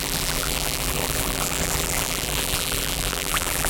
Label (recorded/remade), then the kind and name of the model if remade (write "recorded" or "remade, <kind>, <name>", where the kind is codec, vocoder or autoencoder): remade, vocoder, BigVGAN v2